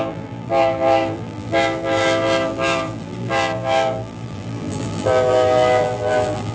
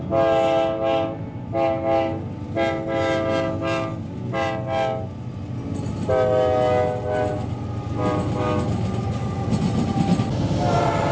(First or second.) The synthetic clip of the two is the first